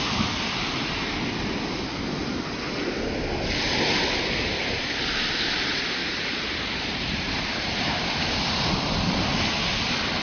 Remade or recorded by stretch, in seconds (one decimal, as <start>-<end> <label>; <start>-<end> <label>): 0.0-6.0 recorded; 6.0-8.1 remade; 8.1-10.2 recorded